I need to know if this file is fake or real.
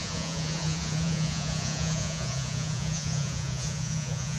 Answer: fake